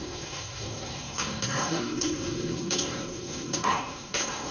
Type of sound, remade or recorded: remade